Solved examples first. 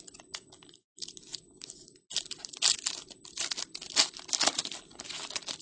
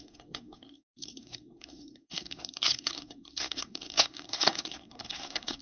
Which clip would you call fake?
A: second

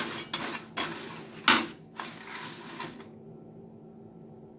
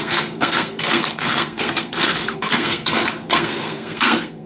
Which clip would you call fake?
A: second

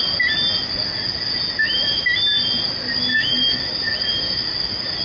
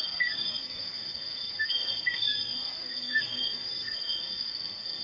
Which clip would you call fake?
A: second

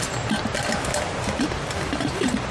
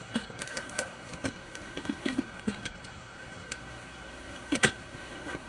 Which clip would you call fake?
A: second